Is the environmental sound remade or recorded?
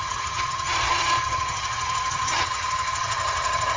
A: remade